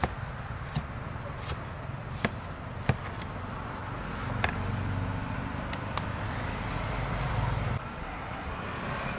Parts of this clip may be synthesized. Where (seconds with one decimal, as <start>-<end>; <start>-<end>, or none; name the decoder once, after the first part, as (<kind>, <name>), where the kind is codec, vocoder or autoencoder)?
8.0-8.5 (codec, SNAC)